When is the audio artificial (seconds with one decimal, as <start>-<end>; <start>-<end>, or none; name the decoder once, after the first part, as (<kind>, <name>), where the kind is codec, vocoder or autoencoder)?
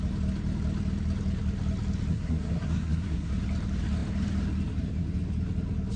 2.1-3.3 (codec, SNAC)